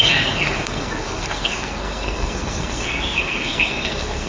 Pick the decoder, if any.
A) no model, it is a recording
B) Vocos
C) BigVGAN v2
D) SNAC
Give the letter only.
D